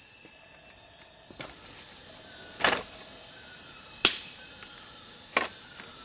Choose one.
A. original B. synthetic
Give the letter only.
A